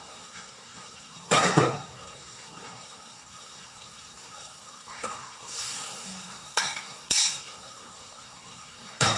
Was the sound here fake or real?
fake